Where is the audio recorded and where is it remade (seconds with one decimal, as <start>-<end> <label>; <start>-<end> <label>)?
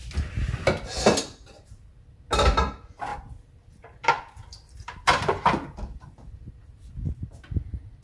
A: 0.0-3.1 recorded; 3.1-6.9 remade; 6.9-8.0 recorded